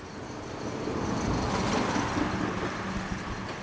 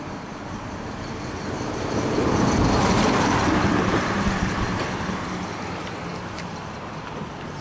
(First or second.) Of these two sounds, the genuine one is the first